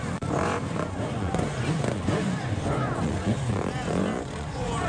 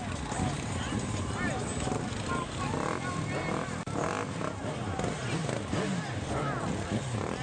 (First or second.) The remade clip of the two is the first